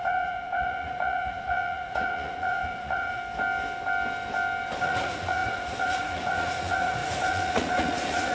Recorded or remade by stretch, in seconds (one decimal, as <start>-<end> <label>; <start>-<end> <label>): 0.0-3.2 remade; 3.2-4.8 recorded; 4.8-8.3 remade